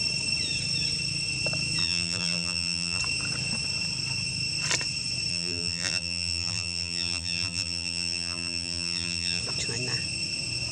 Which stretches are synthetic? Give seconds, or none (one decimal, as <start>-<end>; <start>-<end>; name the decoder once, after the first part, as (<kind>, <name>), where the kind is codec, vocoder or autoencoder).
1.8-3.0 (vocoder, BigVGAN v2); 5.3-9.4